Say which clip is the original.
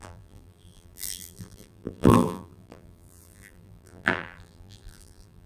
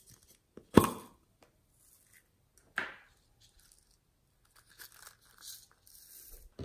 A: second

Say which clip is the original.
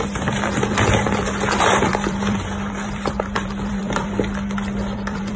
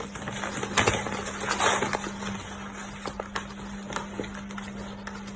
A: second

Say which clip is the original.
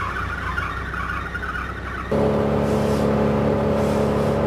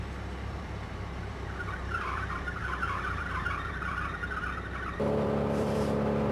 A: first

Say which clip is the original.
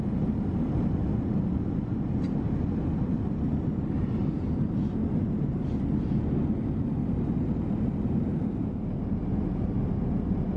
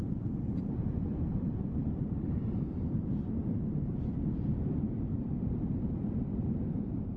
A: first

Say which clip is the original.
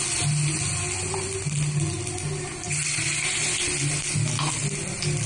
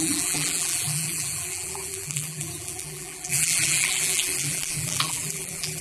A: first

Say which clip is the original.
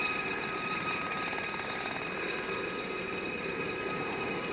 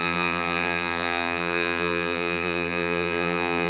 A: first